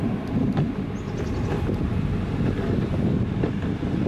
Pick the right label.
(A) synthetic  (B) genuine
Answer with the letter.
B